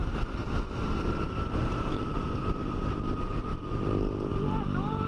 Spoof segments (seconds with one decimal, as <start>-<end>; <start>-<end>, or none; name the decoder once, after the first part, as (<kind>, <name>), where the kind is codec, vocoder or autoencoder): none